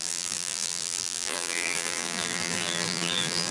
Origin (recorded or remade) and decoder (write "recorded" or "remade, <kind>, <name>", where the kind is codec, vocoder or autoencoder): remade, vocoder, BigVGAN v2